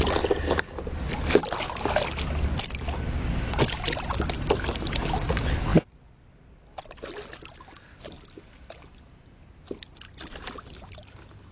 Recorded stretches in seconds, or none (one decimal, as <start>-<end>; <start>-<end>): 0.0-11.5